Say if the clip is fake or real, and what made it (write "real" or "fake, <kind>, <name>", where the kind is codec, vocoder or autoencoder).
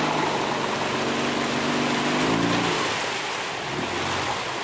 real